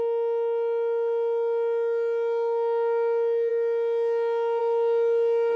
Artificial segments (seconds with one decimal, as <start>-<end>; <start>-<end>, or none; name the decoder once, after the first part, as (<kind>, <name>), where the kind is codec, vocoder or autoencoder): none